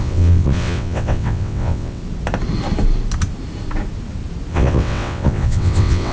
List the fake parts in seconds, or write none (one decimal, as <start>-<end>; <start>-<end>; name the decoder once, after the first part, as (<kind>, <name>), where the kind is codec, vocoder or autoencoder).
0.0-2.0 (vocoder, WaveNeXt); 4.5-6.1